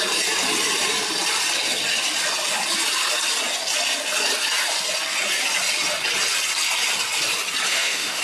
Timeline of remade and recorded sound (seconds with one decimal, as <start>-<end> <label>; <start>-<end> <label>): 0.0-7.7 recorded; 7.7-8.2 remade

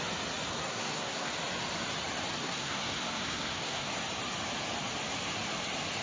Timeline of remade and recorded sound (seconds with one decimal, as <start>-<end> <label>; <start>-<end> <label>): 0.0-0.5 recorded; 0.5-1.3 remade; 1.3-2.4 recorded; 2.4-3.9 remade; 3.9-6.0 recorded

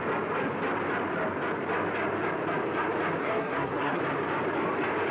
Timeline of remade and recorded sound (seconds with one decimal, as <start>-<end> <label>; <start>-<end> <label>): 0.0-3.2 recorded; 3.2-4.0 remade; 4.0-5.1 recorded

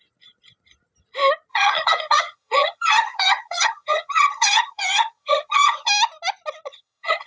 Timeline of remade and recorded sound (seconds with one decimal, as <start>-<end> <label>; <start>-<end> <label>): 0.0-1.5 recorded; 1.5-5.9 remade; 5.9-6.7 recorded; 6.7-7.3 remade